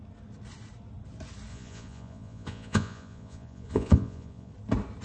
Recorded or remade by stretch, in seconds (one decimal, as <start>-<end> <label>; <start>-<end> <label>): 0.0-1.5 recorded; 1.5-4.5 remade; 4.5-5.0 recorded